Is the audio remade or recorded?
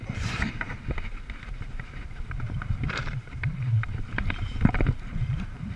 remade